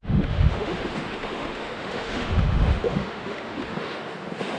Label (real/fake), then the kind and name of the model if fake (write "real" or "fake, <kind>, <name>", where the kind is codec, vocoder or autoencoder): fake, autoencoder, DAC-VAE